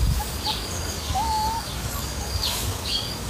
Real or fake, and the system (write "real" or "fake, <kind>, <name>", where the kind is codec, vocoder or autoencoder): fake, codec, DAC